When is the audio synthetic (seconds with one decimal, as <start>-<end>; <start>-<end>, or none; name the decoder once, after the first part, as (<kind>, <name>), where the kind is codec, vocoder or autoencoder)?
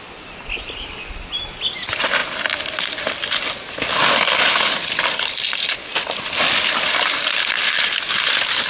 none